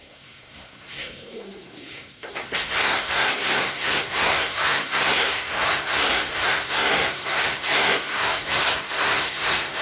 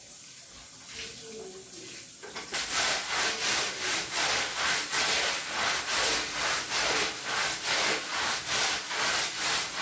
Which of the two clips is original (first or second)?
second